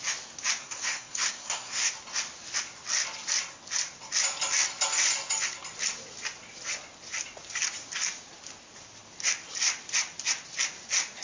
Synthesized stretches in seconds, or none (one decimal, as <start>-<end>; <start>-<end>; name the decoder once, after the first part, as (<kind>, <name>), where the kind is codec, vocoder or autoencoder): 0.6-1.9 (codec, SNAC)